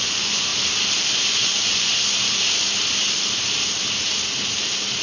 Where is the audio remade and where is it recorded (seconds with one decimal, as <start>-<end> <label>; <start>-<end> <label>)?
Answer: 0.0-0.5 remade; 0.5-1.3 recorded; 1.3-1.9 remade; 1.9-5.0 recorded